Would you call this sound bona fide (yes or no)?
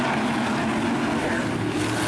yes